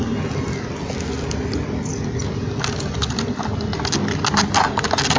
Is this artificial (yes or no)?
no